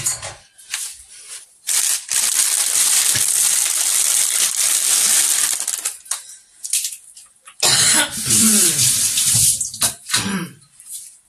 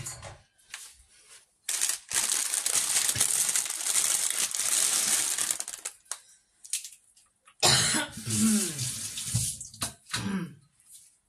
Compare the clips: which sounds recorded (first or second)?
second